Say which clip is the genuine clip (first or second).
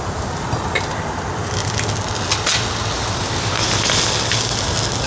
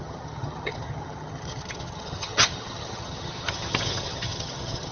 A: first